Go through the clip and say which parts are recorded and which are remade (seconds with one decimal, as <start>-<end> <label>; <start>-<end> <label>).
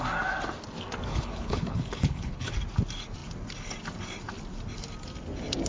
0.0-1.1 recorded; 1.1-2.5 remade; 2.5-5.7 recorded